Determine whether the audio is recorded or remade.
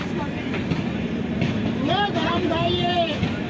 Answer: remade